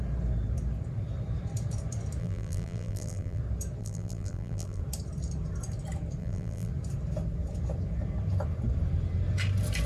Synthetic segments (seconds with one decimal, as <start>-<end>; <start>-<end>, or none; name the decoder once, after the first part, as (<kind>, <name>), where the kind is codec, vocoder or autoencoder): 2.2-3.4 (vocoder, BigVGAN v2); 3.8-4.8; 6.2-6.7